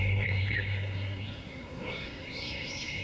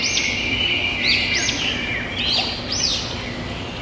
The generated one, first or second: first